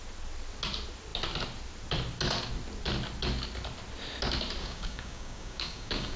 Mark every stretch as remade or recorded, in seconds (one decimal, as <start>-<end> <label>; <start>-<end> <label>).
0.0-4.6 recorded; 4.6-6.2 remade